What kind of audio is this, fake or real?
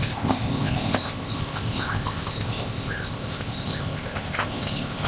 fake